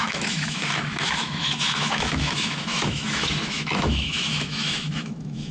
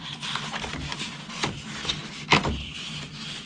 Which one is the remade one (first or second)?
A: first